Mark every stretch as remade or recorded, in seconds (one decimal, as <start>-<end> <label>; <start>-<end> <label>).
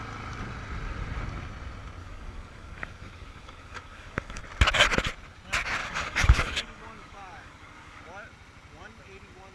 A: 0.0-2.0 recorded; 2.0-4.4 remade; 4.4-5.8 recorded; 5.8-8.0 remade; 8.0-9.5 recorded